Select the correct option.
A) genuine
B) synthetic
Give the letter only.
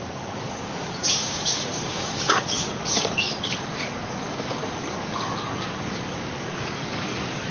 B